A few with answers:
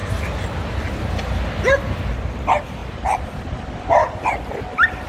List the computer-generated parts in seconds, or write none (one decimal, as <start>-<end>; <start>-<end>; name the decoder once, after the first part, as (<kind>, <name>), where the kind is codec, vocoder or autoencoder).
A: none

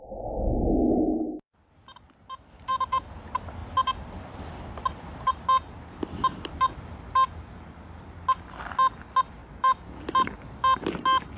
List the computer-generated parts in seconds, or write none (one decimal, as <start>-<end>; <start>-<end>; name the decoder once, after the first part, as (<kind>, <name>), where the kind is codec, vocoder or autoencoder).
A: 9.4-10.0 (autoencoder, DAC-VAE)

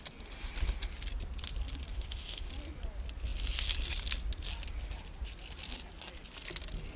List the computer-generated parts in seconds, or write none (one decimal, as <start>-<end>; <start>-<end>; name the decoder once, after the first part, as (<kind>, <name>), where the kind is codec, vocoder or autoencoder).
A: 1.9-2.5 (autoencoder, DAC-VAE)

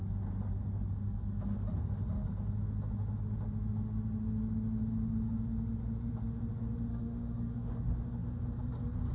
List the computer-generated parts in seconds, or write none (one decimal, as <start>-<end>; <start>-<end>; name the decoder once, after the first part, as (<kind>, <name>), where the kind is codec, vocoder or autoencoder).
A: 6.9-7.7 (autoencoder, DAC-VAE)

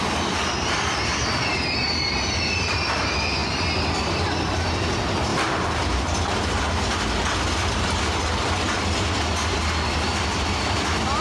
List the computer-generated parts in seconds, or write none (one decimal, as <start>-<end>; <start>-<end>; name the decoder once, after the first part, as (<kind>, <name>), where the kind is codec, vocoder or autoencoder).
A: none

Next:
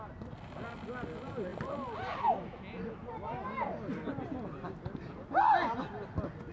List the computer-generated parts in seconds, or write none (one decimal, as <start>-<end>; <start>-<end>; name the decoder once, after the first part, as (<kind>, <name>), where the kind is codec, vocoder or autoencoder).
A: none

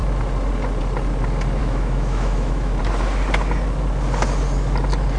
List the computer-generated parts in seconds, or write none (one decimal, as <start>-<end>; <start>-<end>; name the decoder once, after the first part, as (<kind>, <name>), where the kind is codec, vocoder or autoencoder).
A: 1.6-2.8 (autoencoder, DAC-VAE)